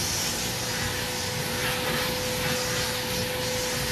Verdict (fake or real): real